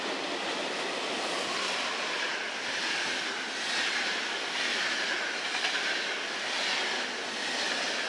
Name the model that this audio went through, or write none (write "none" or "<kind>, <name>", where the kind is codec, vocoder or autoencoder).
none